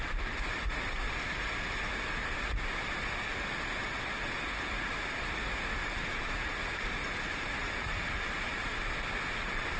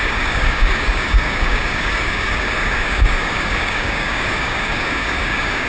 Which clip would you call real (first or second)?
first